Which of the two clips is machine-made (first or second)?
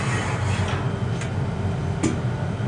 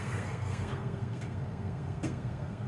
second